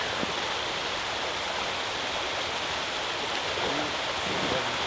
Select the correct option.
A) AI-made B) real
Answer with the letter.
B